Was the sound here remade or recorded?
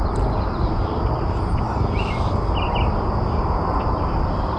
recorded